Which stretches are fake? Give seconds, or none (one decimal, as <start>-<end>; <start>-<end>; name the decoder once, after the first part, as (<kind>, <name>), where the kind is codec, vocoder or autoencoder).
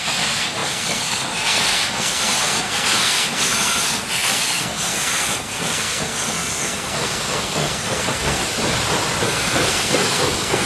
0.0-8.4 (codec, SNAC); 9.2-10.7